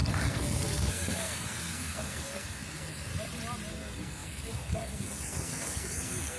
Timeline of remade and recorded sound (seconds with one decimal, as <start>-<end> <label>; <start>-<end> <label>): 0.0-3.1 remade; 3.1-3.7 recorded; 3.7-6.4 remade